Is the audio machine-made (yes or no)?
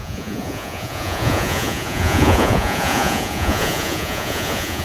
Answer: yes